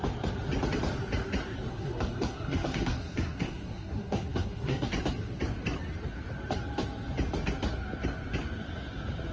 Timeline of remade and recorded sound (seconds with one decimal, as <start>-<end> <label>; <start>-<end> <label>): 0.0-1.7 recorded; 1.7-4.9 remade; 4.9-9.3 recorded